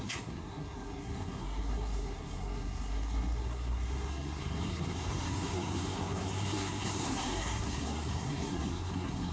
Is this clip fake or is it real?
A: fake